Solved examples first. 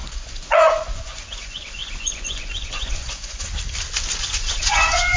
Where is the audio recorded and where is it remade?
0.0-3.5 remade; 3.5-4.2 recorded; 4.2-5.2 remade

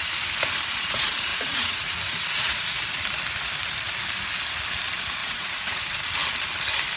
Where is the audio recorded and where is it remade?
0.0-1.3 recorded; 1.3-2.8 remade; 2.8-5.2 recorded; 5.2-5.8 remade; 5.8-7.0 recorded

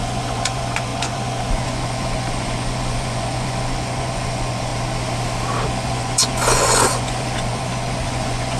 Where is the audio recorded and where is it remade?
0.0-4.7 remade; 4.7-5.7 recorded; 5.7-8.6 remade

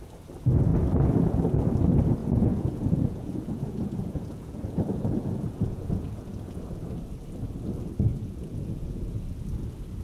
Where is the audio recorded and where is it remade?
0.0-2.2 recorded; 2.2-6.6 remade; 6.6-8.1 recorded; 8.1-9.2 remade; 9.2-10.0 recorded

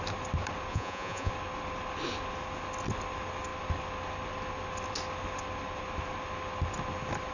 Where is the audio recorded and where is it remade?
0.0-0.7 recorded; 0.7-1.3 remade; 1.3-7.3 recorded